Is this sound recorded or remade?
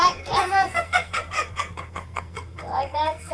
remade